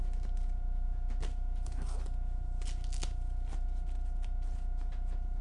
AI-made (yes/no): no